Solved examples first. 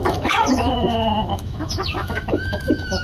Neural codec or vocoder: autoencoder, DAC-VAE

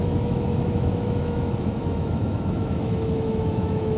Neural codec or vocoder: autoencoder, DAC-VAE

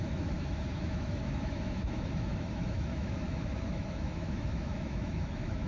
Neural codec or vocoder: autoencoder, DAC-VAE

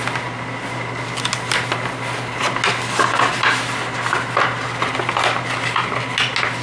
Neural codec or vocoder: none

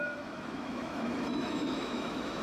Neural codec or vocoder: autoencoder, DAC-VAE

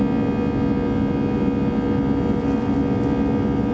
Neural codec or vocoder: none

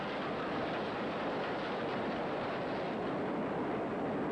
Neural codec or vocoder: none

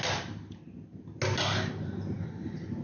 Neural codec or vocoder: none